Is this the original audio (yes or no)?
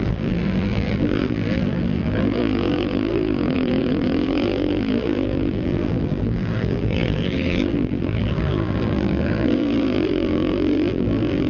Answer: no